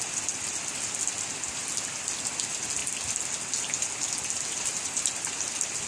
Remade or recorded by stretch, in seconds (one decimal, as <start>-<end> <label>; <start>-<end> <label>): 0.0-5.9 recorded